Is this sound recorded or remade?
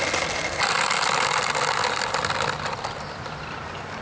recorded